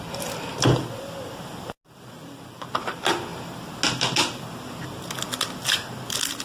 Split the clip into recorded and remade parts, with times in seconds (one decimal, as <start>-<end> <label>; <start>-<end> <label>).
0.0-6.4 recorded